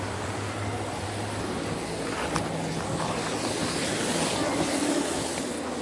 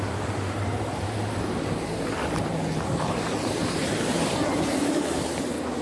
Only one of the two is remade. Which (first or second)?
second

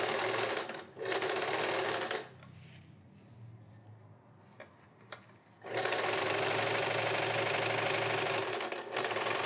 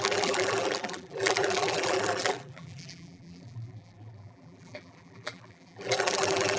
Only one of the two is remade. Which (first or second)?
second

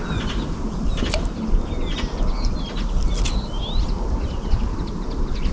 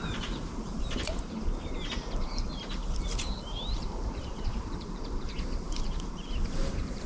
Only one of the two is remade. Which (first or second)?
second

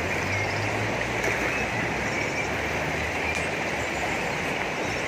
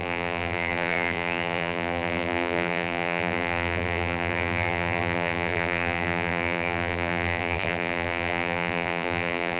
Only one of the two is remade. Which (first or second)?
second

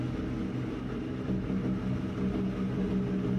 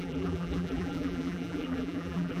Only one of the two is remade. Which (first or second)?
second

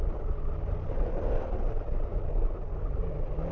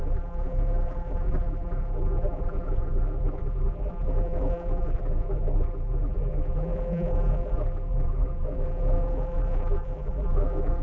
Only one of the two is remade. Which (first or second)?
second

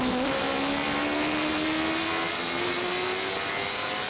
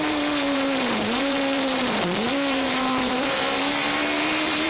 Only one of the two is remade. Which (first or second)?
second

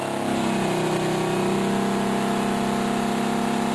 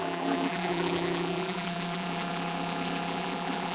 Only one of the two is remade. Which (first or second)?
second